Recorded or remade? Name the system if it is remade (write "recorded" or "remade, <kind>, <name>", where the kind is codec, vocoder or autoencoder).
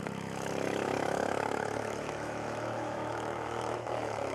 remade, autoencoder, DAC-VAE